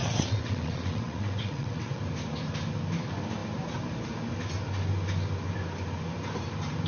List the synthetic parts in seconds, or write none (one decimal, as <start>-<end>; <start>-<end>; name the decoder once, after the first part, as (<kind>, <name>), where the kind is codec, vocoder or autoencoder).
0.0-2.0 (vocoder, WaveNeXt)